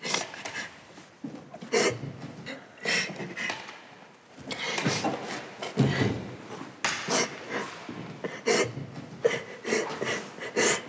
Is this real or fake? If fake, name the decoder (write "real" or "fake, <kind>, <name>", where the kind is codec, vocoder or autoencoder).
real